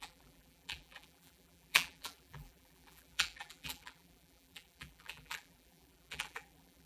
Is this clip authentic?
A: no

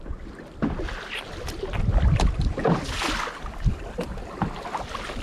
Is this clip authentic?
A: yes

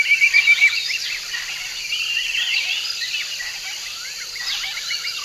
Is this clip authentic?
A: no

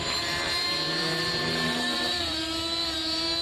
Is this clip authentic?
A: no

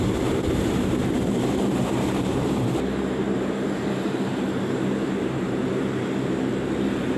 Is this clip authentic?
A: no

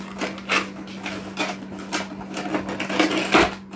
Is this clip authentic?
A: yes